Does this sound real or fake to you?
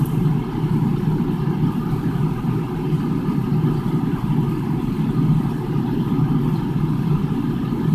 real